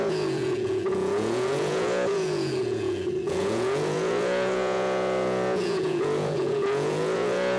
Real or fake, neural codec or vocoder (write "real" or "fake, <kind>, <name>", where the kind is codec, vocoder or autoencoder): fake, vocoder, Vocos